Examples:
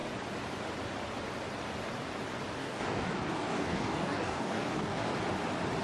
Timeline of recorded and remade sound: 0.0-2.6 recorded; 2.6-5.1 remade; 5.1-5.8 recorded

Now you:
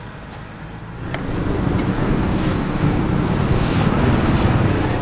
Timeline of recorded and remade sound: 0.0-1.9 recorded; 1.9-2.9 remade; 2.9-3.5 recorded; 3.5-4.1 remade; 4.1-5.0 recorded

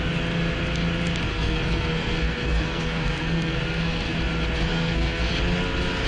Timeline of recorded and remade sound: 0.0-1.3 recorded; 1.3-4.2 remade; 4.2-4.7 recorded; 4.7-5.3 remade; 5.3-6.1 recorded

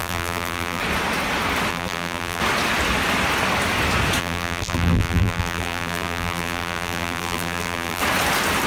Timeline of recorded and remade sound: 0.0-0.8 remade; 0.8-1.7 recorded; 1.7-2.4 remade; 2.4-4.2 recorded; 4.2-8.0 remade; 8.0-8.7 recorded

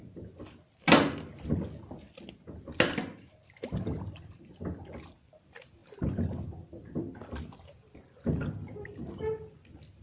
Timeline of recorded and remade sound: 0.0-10.0 recorded

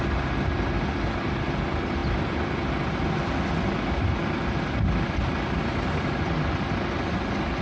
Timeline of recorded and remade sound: 0.0-7.6 recorded

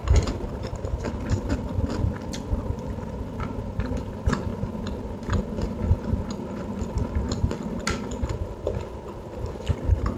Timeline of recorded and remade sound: 0.0-10.2 recorded